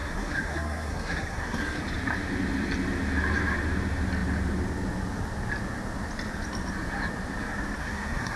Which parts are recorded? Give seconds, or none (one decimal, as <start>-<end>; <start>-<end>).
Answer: 1.8-7.8